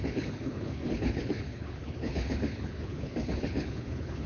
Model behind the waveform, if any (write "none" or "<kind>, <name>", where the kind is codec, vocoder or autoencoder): codec, HILCodec